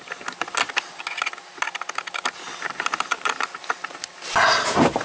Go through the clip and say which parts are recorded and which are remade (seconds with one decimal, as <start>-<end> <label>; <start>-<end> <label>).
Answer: 0.0-2.6 recorded; 2.6-3.3 remade; 3.3-5.0 recorded